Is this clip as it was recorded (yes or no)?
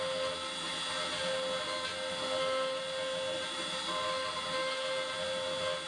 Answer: yes